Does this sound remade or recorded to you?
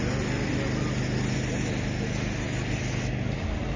recorded